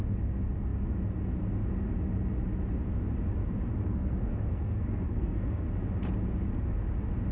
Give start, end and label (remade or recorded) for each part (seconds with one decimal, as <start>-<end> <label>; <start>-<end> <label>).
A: 0.0-3.7 recorded; 3.7-5.6 remade; 5.6-7.3 recorded